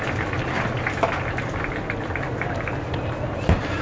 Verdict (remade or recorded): recorded